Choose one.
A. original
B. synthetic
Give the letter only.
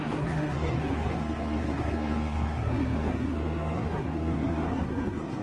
B